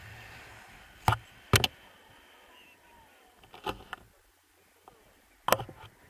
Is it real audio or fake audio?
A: real